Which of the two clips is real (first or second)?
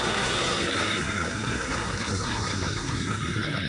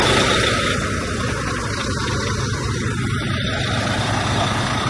second